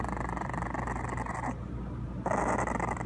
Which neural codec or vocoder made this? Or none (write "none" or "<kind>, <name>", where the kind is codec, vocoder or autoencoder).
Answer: none